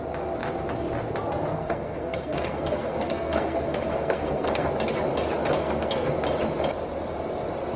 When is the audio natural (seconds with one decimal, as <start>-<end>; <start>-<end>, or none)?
0.0-1.5; 4.7-5.6; 6.1-7.8